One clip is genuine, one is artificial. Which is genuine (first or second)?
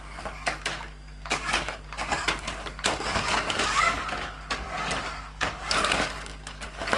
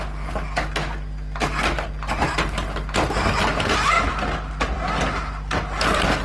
second